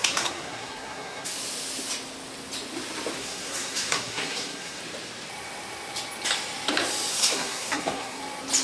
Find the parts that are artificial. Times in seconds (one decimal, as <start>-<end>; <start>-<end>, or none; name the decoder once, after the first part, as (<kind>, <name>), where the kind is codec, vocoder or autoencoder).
0.0-1.4 (codec, SNAC); 3.2-4.8; 7.1-8.2